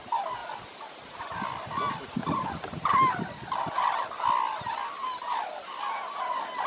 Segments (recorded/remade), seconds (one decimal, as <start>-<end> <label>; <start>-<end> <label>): 0.0-6.7 recorded